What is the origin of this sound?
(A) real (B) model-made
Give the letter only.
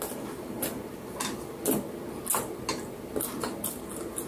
A